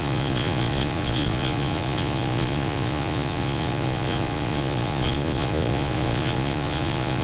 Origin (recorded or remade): remade